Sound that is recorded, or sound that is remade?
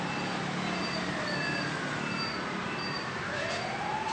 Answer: recorded